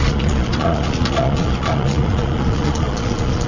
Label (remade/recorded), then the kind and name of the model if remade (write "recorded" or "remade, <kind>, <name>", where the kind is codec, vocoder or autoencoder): remade, vocoder, Vocos